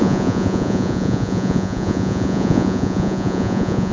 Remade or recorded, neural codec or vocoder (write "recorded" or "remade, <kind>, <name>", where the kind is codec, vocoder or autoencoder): remade, vocoder, Vocos